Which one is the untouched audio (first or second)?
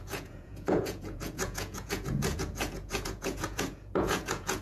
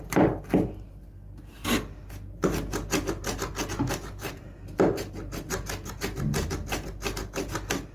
second